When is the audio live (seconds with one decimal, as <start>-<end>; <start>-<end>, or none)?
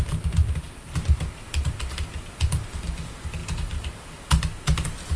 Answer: 0.0-0.4; 1.4-3.4